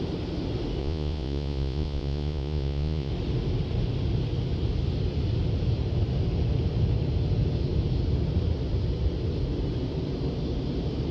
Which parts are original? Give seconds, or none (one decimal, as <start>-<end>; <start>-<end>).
0.0-0.8; 3.1-11.1